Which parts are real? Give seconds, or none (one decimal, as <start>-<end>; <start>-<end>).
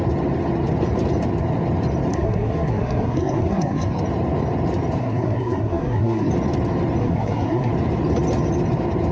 0.0-2.1; 4.0-5.0; 6.3-7.0; 7.7-9.1